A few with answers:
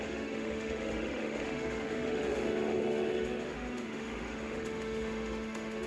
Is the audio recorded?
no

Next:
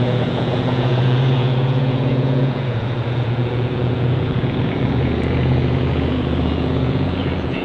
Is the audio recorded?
no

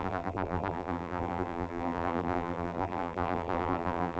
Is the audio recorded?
no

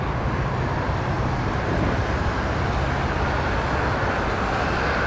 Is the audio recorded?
yes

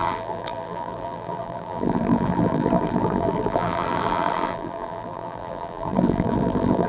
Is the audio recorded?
no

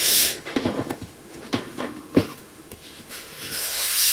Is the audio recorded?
no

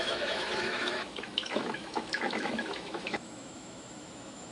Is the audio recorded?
no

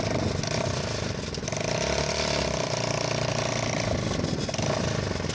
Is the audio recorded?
yes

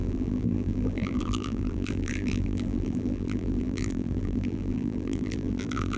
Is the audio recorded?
no